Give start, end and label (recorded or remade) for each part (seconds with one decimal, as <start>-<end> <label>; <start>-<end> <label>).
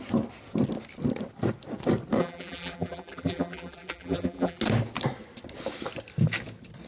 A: 0.0-2.2 recorded; 2.2-4.6 remade; 4.6-6.9 recorded